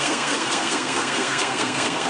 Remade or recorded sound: remade